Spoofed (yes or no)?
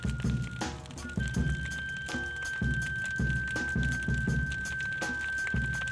no